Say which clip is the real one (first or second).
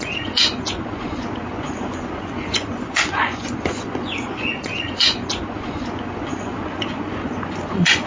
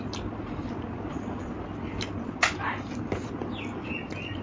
second